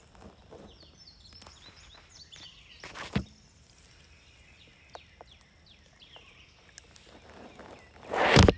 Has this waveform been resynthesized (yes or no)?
no